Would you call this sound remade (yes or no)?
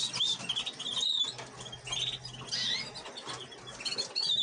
no